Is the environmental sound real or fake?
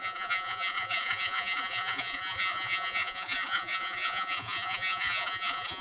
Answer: fake